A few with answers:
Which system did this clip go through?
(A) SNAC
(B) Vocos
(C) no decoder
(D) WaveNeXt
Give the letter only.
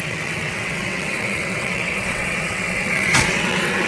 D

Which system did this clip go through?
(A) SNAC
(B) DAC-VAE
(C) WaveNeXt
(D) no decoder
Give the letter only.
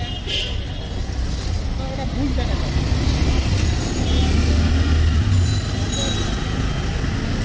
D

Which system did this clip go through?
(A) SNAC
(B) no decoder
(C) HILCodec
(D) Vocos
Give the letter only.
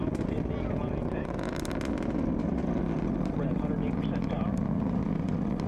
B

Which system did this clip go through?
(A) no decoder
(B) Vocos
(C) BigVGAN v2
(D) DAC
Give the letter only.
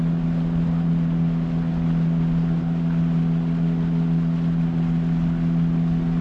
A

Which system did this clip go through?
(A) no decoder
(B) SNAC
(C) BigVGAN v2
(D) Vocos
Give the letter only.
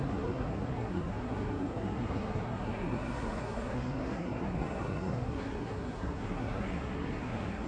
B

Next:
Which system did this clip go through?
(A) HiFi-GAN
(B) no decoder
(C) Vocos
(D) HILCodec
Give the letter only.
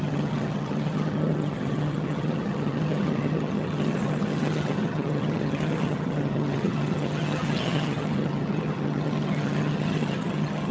A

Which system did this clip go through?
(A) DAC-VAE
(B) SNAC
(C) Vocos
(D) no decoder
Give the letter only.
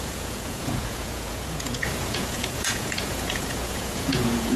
C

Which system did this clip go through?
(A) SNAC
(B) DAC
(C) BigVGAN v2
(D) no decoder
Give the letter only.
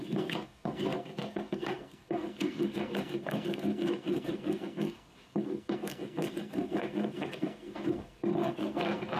A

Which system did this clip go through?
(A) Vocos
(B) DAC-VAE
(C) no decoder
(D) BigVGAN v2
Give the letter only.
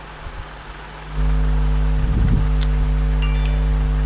C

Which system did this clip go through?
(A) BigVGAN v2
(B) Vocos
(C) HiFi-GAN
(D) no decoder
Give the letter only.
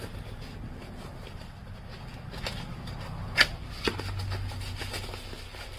D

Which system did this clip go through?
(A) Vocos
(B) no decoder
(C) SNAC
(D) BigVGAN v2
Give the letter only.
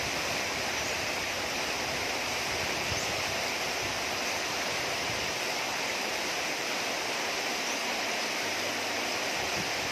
D